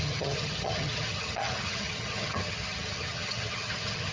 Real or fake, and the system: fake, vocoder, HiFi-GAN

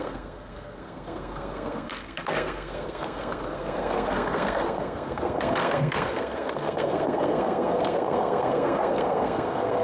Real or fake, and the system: fake, codec, SNAC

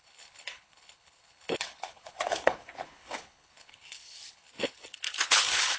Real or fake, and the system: fake, codec, HILCodec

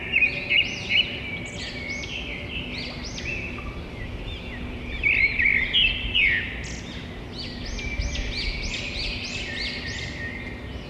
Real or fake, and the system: real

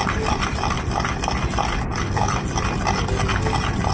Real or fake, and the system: real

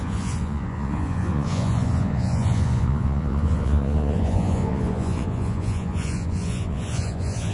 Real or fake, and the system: fake, vocoder, Vocos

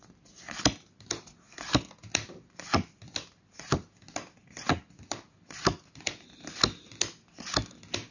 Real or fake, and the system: real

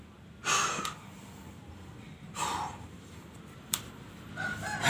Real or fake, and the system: fake, vocoder, BigVGAN v2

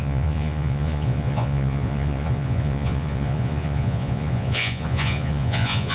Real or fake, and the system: fake, vocoder, Vocos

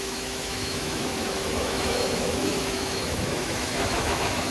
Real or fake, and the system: fake, autoencoder, DAC-VAE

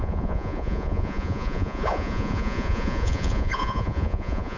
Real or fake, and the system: fake, vocoder, Vocos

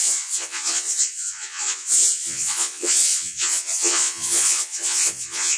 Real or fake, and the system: fake, vocoder, Vocos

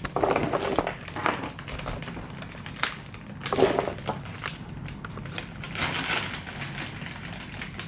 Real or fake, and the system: real